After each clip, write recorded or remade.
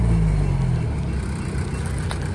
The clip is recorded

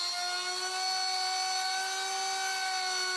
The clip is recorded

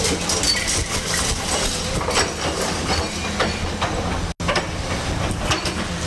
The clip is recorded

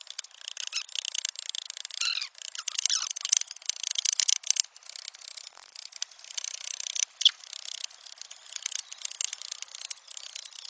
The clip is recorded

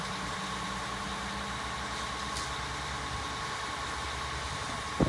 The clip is recorded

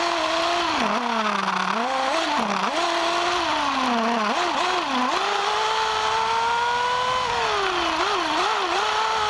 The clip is recorded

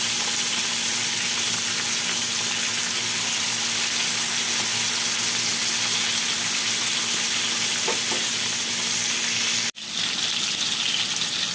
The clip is recorded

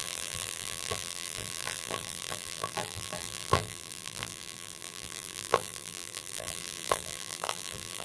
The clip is remade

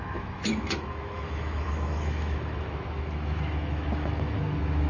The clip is remade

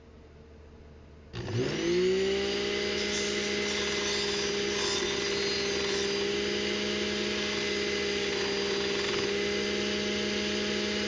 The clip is recorded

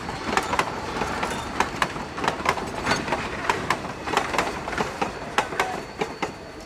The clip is remade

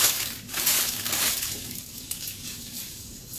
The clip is remade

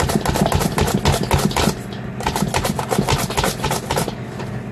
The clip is recorded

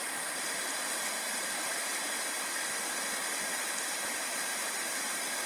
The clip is recorded